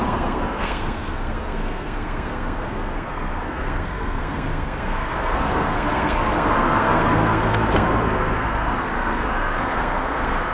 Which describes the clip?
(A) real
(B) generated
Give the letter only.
B